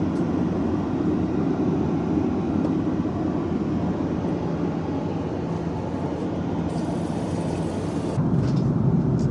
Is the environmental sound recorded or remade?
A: recorded